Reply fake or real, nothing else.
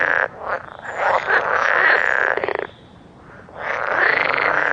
real